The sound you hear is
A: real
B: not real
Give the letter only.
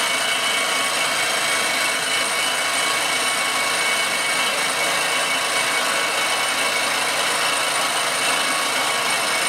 A